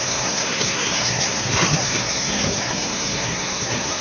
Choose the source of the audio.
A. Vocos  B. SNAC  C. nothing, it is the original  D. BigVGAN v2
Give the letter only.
B